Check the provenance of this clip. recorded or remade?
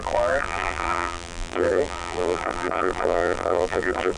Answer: remade